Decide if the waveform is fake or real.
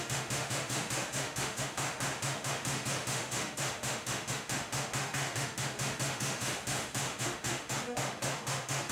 fake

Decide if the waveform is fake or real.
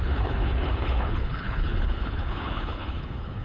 fake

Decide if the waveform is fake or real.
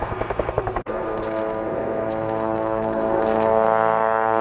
fake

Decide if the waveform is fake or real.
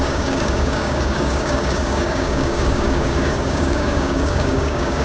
fake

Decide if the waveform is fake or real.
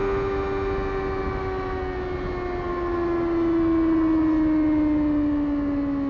real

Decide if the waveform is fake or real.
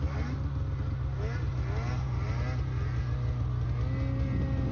real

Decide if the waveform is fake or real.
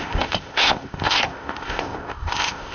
fake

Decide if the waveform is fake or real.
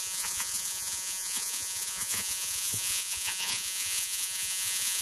fake